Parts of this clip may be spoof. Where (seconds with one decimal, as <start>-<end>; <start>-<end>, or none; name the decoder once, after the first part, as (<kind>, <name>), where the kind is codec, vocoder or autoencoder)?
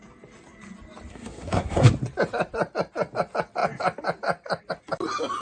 1.1-1.9 (codec, SNAC)